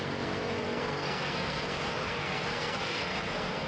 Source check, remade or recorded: remade